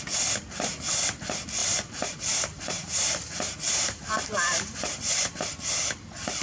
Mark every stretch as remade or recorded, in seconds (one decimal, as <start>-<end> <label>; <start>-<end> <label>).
0.0-1.6 recorded; 1.6-5.4 remade; 5.4-6.4 recorded